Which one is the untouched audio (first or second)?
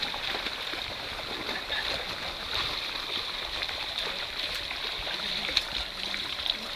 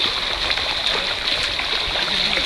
second